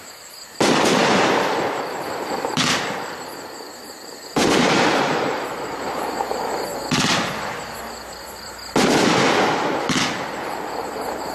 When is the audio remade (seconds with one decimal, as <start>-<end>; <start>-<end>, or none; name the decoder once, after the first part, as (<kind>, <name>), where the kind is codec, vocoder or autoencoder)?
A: 0.0-6.7 (vocoder, BigVGAN v2); 10.7-11.3